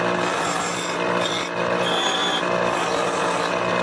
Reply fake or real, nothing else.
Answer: real